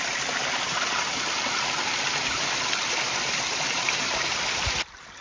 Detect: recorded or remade recorded